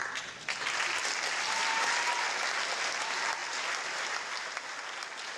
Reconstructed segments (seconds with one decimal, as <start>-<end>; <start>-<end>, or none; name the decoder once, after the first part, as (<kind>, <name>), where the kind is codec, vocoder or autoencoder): none